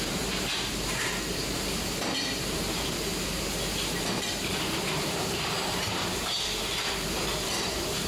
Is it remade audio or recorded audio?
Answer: remade